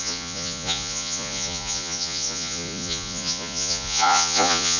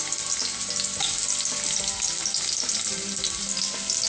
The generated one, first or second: first